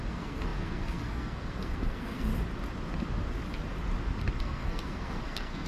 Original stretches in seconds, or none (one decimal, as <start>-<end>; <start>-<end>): 2.3-4.4

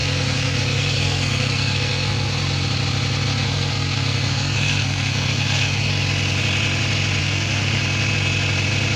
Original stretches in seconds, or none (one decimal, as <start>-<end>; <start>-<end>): 2.4-3.3; 5.9-7.2; 7.8-9.0